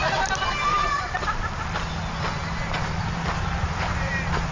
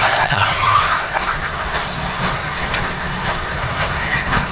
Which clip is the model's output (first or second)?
second